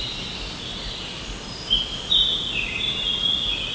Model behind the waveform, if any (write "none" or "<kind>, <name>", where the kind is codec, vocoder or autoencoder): none